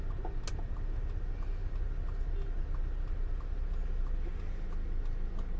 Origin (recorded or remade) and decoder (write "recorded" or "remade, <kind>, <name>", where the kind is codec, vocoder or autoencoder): recorded